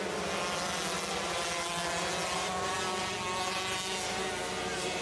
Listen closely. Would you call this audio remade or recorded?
recorded